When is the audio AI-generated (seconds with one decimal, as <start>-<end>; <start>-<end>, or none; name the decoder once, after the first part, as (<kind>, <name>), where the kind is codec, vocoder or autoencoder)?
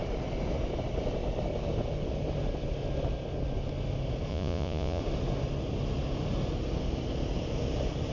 4.3-5.0 (vocoder, Vocos)